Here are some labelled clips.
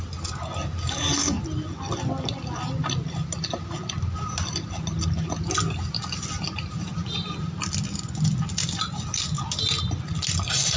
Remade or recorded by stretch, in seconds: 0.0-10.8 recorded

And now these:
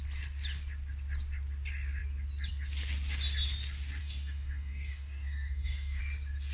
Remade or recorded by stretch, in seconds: 0.0-4.0 recorded; 4.0-6.0 remade; 6.0-6.5 recorded

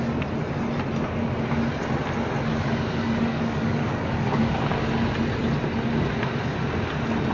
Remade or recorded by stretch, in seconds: 0.0-2.5 recorded; 2.5-4.7 remade; 4.7-7.3 recorded

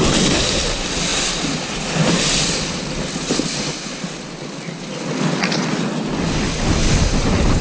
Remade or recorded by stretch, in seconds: 0.0-7.6 recorded

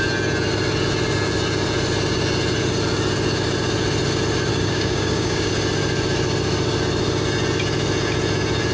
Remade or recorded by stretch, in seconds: 0.0-4.5 recorded; 4.5-5.5 remade; 5.5-8.7 recorded

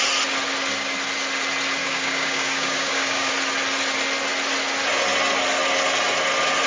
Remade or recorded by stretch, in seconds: 0.0-1.8 recorded; 1.8-3.3 remade; 3.3-6.7 recorded

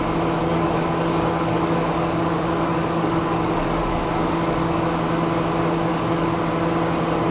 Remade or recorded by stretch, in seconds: 0.0-0.4 recorded; 0.4-4.8 remade; 4.8-5.9 recorded; 5.9-6.4 remade; 6.4-7.3 recorded